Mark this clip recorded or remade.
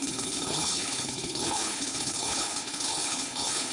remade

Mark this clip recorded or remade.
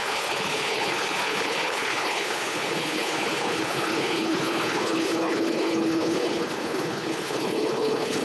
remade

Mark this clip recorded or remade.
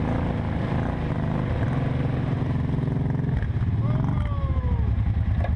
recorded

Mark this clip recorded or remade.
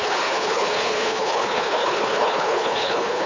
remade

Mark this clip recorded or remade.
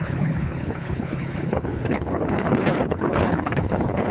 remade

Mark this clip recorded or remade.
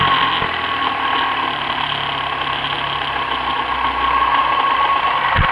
recorded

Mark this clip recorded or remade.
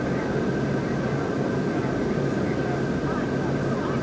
recorded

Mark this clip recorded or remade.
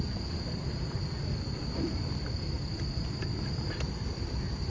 recorded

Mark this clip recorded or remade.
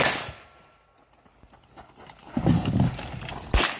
recorded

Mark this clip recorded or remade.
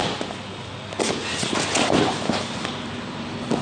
recorded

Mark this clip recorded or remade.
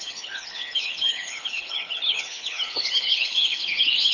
remade